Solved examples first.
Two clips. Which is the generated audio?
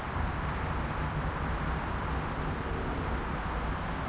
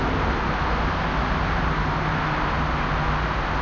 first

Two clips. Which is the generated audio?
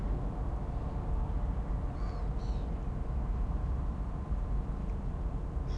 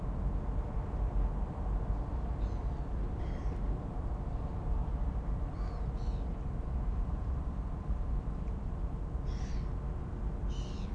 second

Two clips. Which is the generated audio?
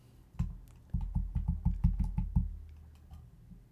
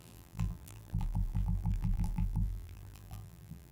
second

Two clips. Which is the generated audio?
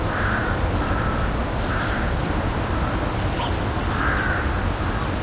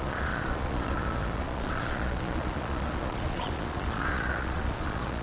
second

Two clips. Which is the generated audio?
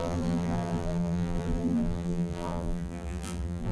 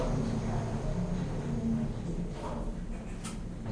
first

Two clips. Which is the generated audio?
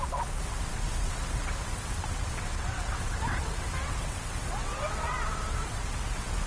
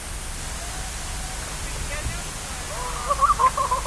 first